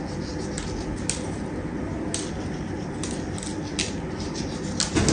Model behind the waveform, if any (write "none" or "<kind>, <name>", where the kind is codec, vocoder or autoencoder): none